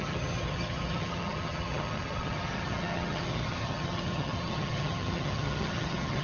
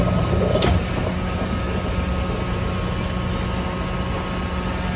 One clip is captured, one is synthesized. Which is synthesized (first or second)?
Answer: first